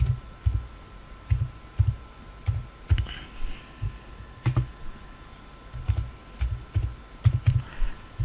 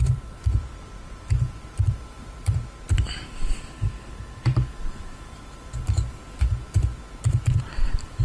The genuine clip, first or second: first